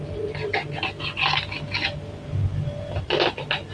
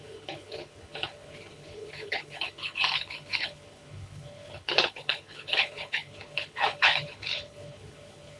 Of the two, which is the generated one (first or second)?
second